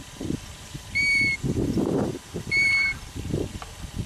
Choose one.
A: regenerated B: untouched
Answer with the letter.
A